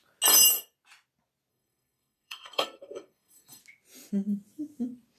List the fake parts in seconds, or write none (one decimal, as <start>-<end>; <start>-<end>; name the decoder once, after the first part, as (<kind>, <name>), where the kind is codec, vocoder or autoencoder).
1.5-3.6 (codec, SNAC)